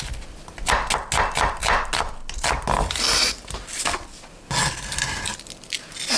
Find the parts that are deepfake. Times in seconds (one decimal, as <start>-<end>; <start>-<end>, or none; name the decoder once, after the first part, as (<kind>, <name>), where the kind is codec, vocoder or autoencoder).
none